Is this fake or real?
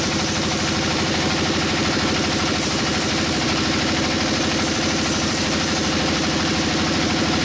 fake